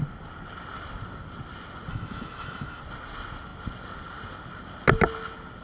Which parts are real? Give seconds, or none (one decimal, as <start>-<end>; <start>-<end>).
0.0-1.9; 2.8-5.6